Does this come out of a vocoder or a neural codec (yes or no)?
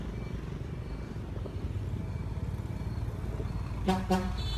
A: no